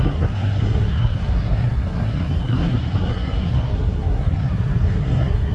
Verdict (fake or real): fake